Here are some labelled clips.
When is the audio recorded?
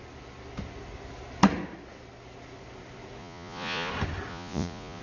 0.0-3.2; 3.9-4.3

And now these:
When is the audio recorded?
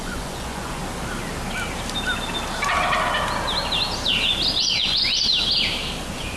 0.8-4.6; 5.3-6.0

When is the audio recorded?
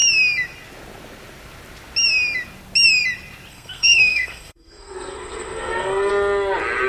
0.0-3.5; 6.1-6.9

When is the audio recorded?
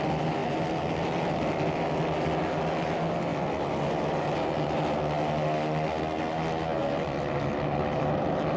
0.0-6.8; 7.5-8.6